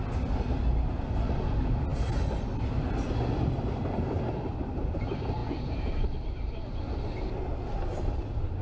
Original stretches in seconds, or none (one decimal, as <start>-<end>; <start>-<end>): 0.0-8.6